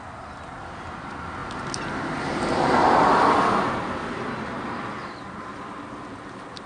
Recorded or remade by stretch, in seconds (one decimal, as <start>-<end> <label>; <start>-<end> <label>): 0.0-6.7 recorded